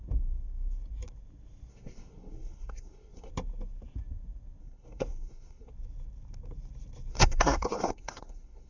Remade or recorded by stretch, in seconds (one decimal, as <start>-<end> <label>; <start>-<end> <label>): 0.0-1.7 recorded; 1.7-3.3 remade; 3.3-4.6 recorded; 4.6-5.7 remade; 5.7-7.1 recorded; 7.1-8.7 remade